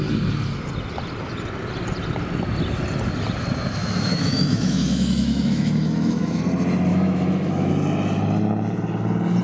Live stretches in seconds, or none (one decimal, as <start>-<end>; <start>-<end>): 0.0-3.8; 6.4-6.9; 7.7-9.4